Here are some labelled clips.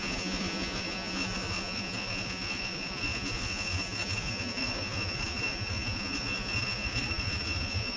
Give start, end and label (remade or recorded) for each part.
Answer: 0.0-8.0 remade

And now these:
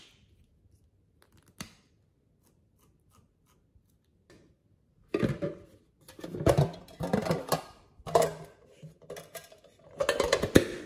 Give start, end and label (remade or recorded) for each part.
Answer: 0.0-10.9 recorded

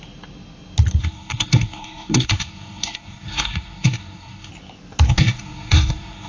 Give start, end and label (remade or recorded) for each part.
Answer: 0.0-1.0 recorded; 1.0-4.5 remade; 4.5-5.1 recorded; 5.1-6.3 remade

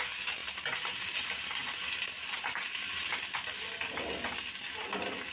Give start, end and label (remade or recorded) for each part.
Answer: 0.0-5.3 recorded

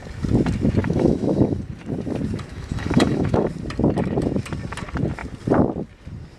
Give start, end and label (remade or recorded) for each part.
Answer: 0.0-0.8 recorded; 0.8-1.6 remade; 1.6-2.5 recorded; 2.5-3.5 remade; 3.5-6.4 recorded

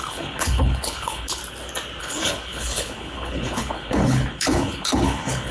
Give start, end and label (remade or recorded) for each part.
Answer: 0.0-1.4 remade; 1.4-2.0 recorded; 2.0-5.5 remade

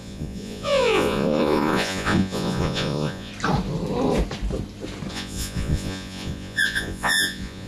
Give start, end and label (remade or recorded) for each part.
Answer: 0.0-3.3 remade; 3.3-5.1 recorded; 5.1-7.7 remade